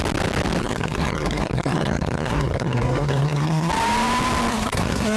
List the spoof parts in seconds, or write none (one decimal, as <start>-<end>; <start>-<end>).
0.6-3.7; 4.5-5.2